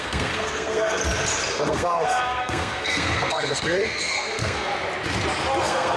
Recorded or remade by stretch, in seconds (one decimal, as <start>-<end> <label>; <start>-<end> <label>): 0.0-1.0 remade; 1.0-1.5 recorded; 1.5-4.7 remade; 4.7-5.6 recorded; 5.6-6.0 remade